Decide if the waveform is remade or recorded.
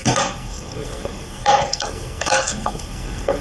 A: remade